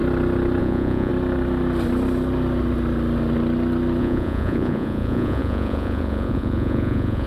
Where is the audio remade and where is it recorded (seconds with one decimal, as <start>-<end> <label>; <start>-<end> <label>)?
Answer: 0.0-0.6 recorded; 0.6-1.1 remade; 1.1-4.0 recorded; 4.0-7.3 remade